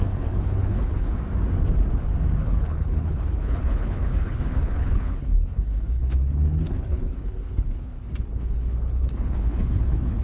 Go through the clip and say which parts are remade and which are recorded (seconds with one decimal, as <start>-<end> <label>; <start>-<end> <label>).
0.0-1.2 remade; 1.2-2.4 recorded; 2.4-10.2 remade